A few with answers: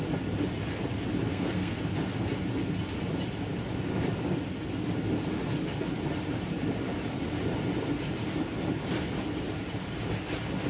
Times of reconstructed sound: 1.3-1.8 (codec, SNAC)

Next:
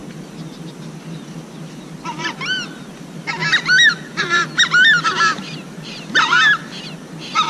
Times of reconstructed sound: none

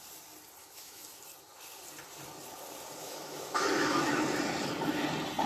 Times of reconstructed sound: 0.6-1.2 (autoencoder, DAC-VAE); 3.0-4.1

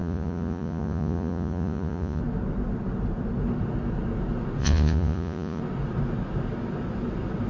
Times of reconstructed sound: 0.0-2.2 (vocoder, Vocos); 4.6-5.6

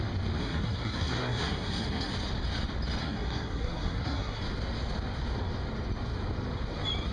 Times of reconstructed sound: 0.4-2.1 (codec, SNAC); 3.0-4.4

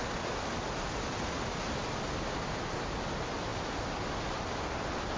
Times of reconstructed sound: none